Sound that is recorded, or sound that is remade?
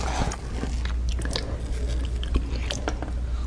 recorded